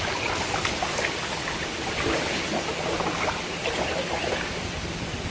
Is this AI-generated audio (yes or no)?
no